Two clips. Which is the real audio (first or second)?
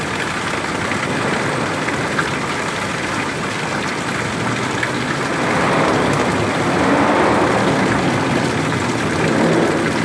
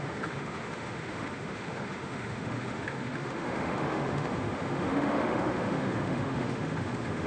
first